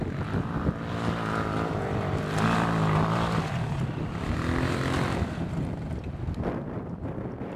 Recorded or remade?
recorded